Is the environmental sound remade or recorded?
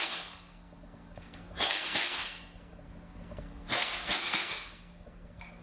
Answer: remade